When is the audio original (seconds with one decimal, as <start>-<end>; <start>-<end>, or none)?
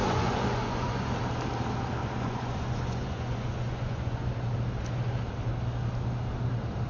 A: 1.1-2.0; 4.3-6.9